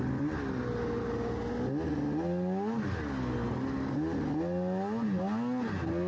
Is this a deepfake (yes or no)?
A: no